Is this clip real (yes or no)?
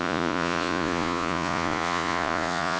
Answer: no